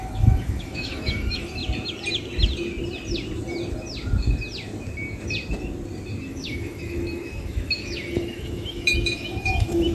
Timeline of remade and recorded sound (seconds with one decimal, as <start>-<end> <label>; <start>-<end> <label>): 0.0-1.6 remade; 1.6-6.3 recorded; 6.3-9.9 remade